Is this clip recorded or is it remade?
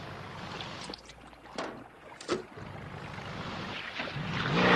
recorded